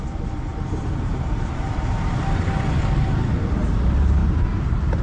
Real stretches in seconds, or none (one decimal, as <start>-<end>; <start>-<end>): 0.0-0.5; 3.5-4.2